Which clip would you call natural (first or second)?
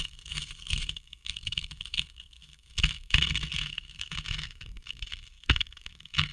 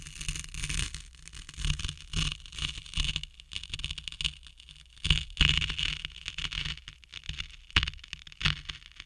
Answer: second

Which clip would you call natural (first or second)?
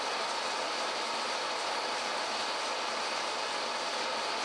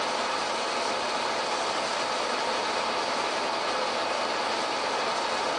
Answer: second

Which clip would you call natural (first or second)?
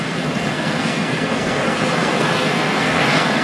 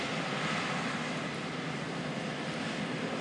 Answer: second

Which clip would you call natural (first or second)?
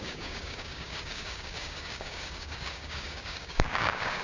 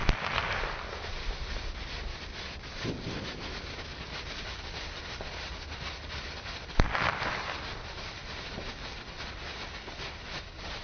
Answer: second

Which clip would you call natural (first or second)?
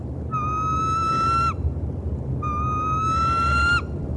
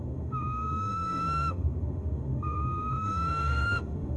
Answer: first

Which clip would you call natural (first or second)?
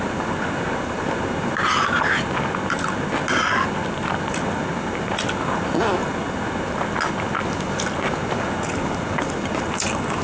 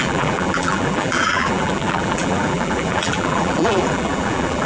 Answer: first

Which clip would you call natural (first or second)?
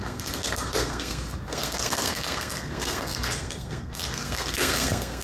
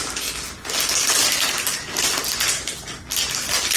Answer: second